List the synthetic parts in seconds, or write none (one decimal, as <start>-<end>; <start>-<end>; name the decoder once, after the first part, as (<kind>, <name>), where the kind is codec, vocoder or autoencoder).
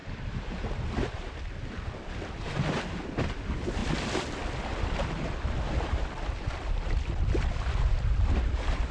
0.0-0.7 (vocoder, BigVGAN v2); 3.8-4.3